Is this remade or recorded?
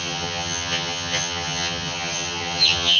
remade